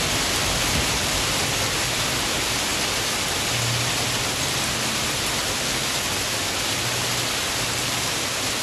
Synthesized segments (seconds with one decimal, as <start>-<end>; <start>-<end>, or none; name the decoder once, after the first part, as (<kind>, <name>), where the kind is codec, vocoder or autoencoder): none